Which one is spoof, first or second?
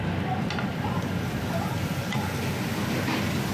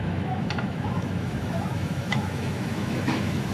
second